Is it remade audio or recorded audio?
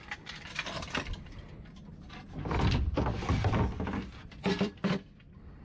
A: remade